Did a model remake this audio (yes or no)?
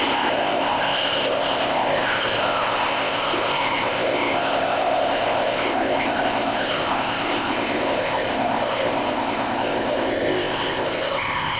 yes